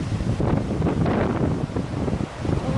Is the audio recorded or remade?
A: recorded